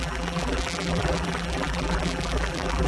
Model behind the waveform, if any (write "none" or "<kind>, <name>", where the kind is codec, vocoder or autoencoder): vocoder, BigVGAN v2